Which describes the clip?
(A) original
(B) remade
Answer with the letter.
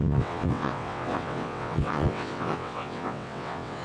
B